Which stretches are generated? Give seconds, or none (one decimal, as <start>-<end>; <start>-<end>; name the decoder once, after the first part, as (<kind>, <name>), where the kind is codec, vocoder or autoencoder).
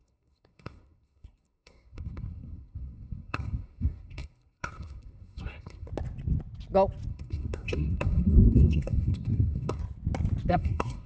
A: 0.0-5.9 (codec, SNAC); 7.1-9.8; 10.5-11.1